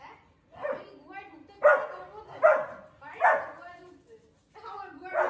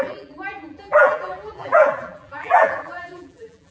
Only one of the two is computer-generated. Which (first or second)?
second